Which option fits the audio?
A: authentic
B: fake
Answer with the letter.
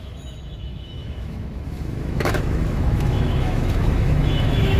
B